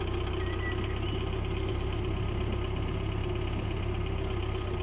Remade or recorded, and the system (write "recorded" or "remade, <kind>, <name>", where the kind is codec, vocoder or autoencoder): recorded